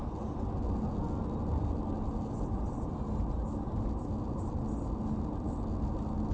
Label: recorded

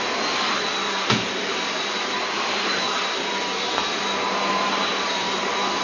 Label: remade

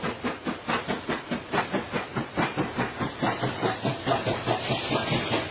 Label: recorded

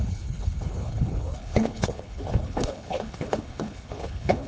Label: remade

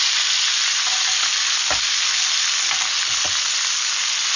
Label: recorded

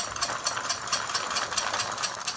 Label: recorded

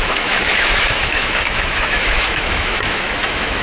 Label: remade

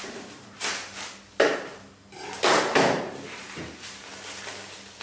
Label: recorded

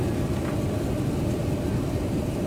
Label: recorded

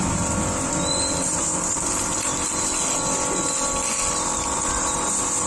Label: recorded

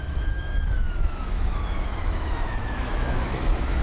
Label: remade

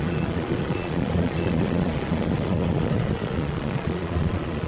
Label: remade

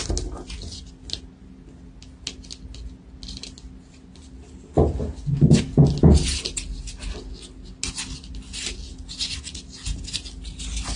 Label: recorded